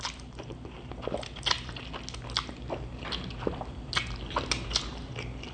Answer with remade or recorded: recorded